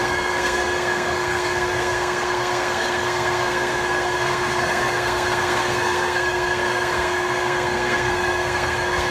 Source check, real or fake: fake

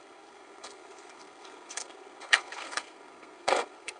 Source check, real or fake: fake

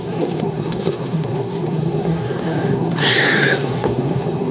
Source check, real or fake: fake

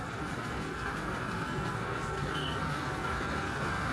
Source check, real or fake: fake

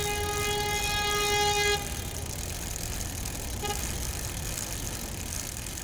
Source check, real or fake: real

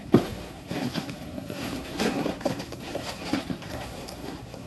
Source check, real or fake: fake